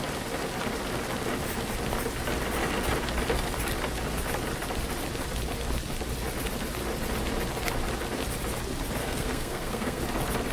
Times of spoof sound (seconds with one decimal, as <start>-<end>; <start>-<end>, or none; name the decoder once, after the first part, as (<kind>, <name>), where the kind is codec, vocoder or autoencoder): 9.0-10.0 (codec, SNAC)